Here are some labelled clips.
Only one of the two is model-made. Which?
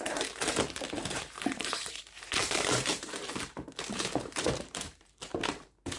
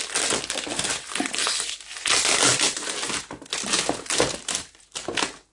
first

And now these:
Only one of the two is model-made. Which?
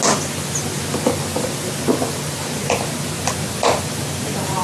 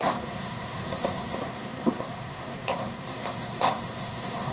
second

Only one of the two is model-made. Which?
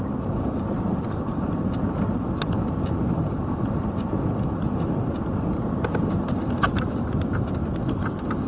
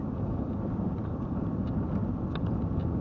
first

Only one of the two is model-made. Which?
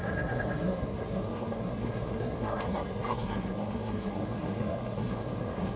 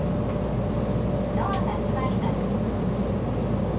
first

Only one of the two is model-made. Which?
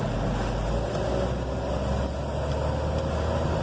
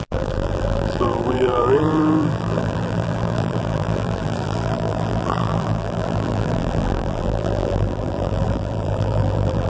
second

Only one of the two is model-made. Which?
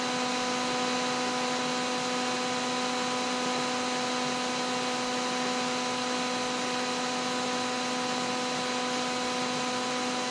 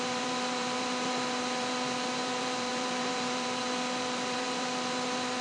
second